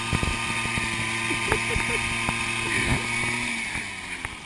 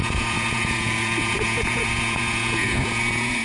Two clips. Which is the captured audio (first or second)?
first